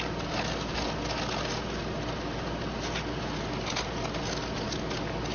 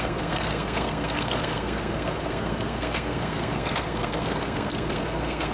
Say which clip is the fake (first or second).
second